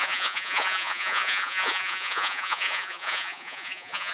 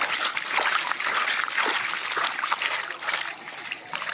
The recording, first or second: second